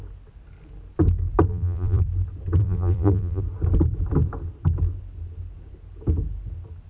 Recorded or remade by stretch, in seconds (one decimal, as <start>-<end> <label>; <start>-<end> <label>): 0.0-1.5 recorded; 1.5-2.0 remade; 2.0-2.6 recorded; 2.6-3.4 remade; 3.4-6.9 recorded